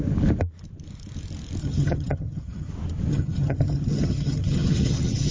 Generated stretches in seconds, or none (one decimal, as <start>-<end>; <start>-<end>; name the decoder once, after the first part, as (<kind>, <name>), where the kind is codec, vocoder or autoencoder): 1.6-2.7 (vocoder, HiFi-GAN); 3.1-5.3